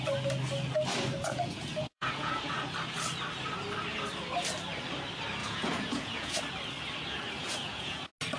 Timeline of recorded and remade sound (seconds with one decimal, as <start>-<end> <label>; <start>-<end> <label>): 0.0-1.2 recorded; 1.2-2.4 remade; 2.4-5.4 recorded; 5.4-6.4 remade; 6.4-7.4 recorded; 7.4-8.0 remade; 8.0-8.4 recorded